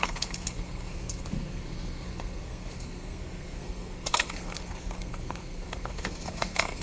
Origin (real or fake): fake